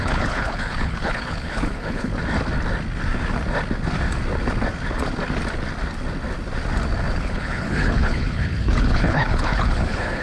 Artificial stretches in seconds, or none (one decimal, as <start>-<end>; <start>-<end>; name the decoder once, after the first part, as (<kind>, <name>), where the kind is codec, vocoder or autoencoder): 0.0-2.1 (codec, HILCodec); 7.1-10.2